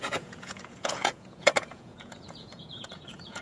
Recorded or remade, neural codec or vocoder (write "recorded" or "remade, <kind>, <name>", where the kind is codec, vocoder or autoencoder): remade, vocoder, Vocos